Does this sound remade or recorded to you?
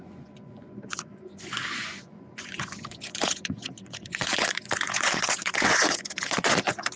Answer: remade